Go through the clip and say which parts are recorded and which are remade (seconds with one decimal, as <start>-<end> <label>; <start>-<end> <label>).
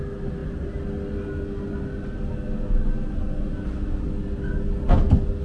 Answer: 0.0-5.4 recorded